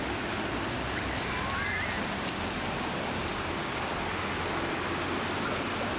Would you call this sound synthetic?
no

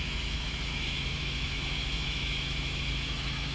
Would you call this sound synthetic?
yes